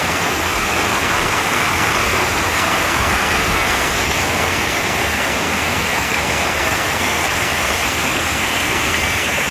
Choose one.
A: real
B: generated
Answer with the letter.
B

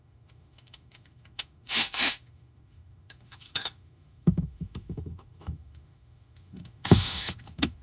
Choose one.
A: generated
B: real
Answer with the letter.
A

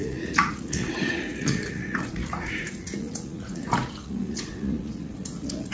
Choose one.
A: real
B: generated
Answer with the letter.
B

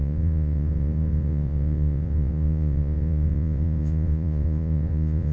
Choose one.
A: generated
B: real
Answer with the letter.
A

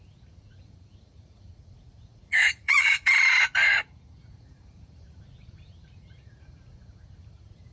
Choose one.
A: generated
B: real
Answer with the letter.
A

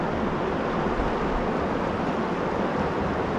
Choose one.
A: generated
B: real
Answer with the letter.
B